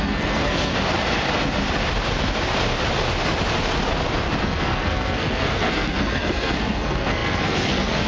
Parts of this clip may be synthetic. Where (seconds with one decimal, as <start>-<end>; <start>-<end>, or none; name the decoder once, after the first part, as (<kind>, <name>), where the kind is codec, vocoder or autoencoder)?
0.0-0.7 (codec, SNAC); 4.4-8.1